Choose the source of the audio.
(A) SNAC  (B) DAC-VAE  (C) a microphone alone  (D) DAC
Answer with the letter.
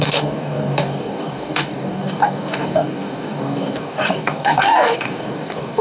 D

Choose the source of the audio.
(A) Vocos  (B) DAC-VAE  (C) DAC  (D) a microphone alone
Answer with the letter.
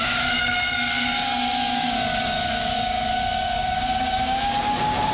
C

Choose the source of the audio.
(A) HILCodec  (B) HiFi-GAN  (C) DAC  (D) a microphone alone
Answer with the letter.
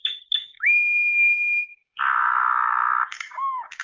C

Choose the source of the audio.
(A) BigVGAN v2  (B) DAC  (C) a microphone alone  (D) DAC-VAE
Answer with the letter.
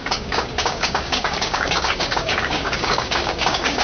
B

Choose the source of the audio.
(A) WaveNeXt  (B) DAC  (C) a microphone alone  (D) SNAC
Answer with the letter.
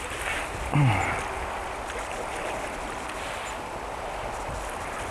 C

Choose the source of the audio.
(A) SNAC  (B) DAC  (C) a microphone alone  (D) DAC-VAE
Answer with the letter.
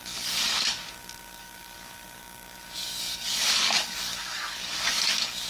B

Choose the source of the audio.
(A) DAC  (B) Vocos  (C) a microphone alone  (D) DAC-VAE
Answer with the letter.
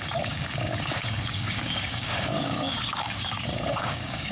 A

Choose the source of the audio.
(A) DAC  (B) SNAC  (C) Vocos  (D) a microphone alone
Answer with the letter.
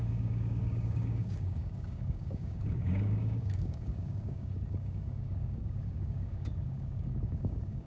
A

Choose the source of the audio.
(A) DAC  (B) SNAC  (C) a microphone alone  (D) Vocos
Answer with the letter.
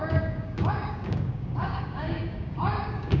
A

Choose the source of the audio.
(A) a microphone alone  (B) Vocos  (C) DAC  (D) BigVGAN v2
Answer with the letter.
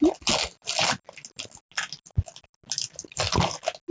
A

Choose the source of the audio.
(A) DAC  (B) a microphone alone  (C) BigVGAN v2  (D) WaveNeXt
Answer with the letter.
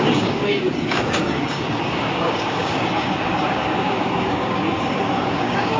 A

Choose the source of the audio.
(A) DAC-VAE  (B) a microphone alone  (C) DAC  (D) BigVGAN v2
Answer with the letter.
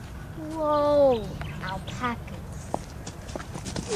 B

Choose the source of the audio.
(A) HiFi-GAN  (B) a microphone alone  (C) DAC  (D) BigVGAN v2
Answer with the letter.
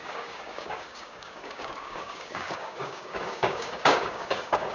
C